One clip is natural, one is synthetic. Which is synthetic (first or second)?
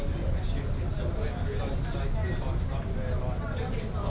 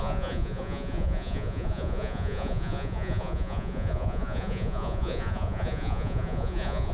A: second